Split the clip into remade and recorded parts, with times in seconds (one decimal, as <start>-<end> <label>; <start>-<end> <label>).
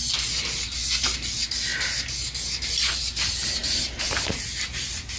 0.0-5.2 recorded